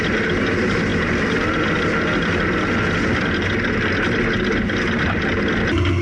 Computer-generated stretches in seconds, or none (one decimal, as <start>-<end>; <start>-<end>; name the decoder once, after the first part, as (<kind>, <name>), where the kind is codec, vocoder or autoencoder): none